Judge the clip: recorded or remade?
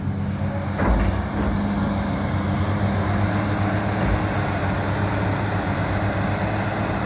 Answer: recorded